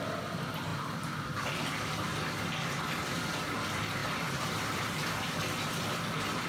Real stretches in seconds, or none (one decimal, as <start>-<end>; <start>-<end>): 0.0-6.5